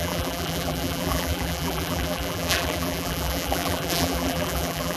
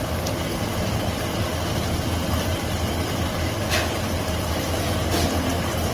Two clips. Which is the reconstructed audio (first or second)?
first